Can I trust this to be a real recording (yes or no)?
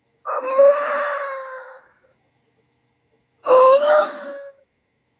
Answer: no